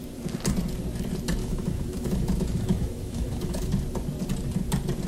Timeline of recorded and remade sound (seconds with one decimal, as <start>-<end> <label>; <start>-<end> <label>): 0.0-1.4 recorded; 1.4-3.7 remade; 3.7-5.1 recorded